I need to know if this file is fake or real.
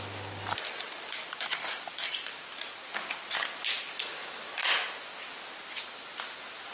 real